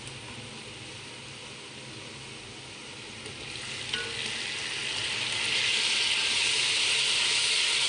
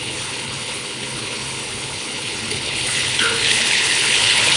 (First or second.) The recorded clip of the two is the first